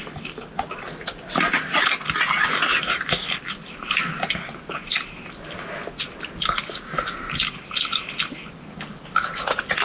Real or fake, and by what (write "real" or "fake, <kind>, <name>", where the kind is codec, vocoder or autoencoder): real